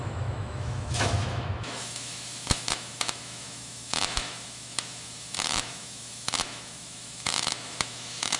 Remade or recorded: remade